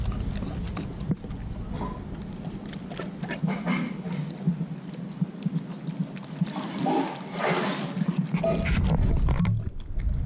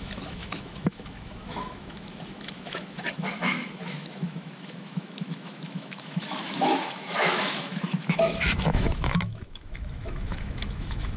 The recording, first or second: first